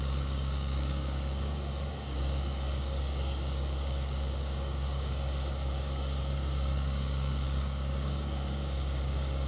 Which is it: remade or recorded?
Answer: remade